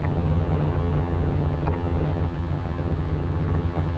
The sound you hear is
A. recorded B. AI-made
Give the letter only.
B